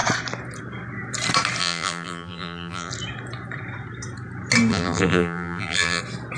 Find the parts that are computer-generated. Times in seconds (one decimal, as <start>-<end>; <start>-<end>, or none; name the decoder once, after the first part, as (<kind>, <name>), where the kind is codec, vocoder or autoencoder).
1.6-2.9 (vocoder, BigVGAN v2); 4.7-6.0